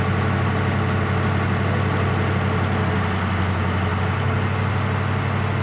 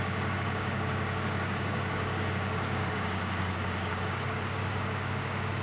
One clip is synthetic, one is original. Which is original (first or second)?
first